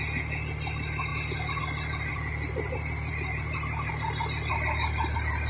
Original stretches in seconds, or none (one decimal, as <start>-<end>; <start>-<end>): 0.0-2.1; 3.9-5.5